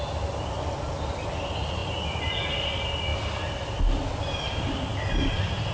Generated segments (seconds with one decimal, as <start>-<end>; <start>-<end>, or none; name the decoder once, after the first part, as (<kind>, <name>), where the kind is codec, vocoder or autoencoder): none